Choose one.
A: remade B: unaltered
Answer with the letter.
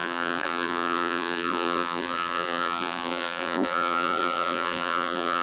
A